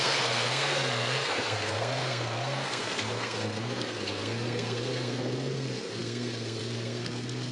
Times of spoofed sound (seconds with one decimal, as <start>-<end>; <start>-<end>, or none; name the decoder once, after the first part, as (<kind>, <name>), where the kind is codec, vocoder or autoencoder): 0.0-7.5 (codec, SNAC)